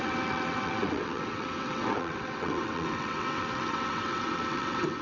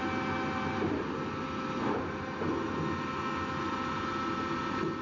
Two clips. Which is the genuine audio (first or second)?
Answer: second